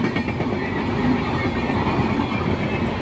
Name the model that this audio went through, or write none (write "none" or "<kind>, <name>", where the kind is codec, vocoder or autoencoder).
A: none